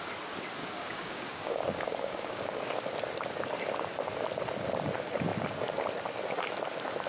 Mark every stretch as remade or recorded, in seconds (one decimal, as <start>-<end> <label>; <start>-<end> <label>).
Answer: 0.0-0.6 recorded; 0.6-2.6 remade; 2.6-7.1 recorded